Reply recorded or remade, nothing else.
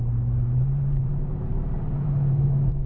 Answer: remade